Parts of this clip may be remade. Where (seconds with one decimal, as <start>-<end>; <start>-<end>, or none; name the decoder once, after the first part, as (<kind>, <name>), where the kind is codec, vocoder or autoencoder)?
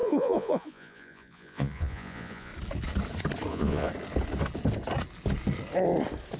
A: 0.0-2.5 (vocoder, Vocos); 3.5-3.9